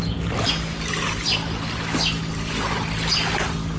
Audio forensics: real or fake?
real